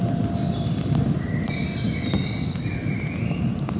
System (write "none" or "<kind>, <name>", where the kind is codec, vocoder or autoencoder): none